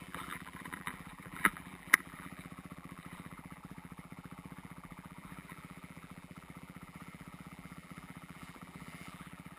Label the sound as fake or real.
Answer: fake